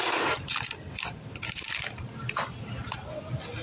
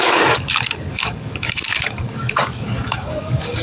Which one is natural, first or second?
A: first